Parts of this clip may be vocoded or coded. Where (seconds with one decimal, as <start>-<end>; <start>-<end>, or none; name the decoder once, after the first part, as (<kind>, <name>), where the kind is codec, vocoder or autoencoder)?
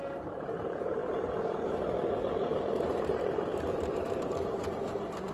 0.0-1.0 (vocoder, BigVGAN v2); 2.1-5.3